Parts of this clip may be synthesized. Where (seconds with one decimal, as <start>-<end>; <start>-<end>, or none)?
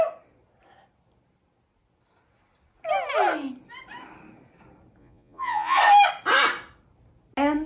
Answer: 5.0-5.8